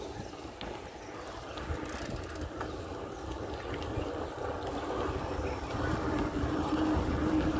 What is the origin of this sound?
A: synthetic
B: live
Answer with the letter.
B